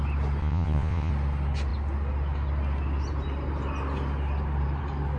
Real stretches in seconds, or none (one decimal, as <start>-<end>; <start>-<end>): 0.0-0.4; 1.1-5.2